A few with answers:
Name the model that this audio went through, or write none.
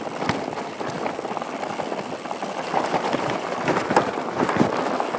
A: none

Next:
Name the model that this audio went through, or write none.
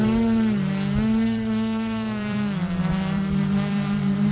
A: vocoder, BigVGAN v2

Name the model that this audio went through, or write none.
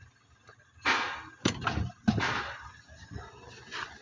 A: none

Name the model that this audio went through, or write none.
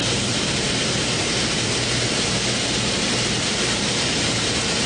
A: vocoder, BigVGAN v2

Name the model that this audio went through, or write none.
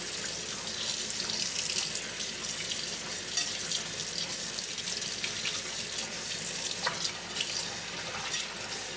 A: none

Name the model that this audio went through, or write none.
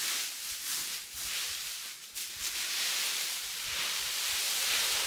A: vocoder, BigVGAN v2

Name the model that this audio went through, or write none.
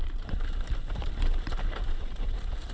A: vocoder, BigVGAN v2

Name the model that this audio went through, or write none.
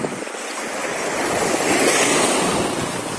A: none